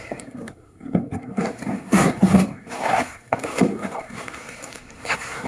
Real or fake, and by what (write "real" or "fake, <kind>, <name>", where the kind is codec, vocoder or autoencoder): fake, codec, SNAC